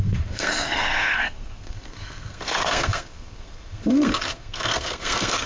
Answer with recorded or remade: remade